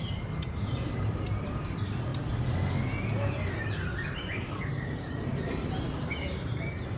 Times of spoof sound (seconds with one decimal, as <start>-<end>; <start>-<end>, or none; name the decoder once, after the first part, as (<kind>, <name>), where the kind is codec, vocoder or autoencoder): 0.0-2.1 (vocoder, BigVGAN v2); 4.1-7.0